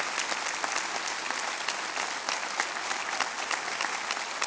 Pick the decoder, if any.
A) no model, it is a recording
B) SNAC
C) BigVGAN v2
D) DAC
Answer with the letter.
A